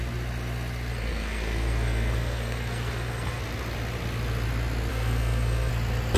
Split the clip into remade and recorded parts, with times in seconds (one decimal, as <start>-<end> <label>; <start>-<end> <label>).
0.0-0.9 recorded; 0.9-3.4 remade; 3.4-4.9 recorded; 4.9-5.7 remade; 5.7-6.2 recorded